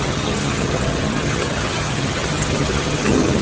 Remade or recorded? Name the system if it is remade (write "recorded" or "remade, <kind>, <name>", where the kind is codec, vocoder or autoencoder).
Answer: remade, vocoder, HiFi-GAN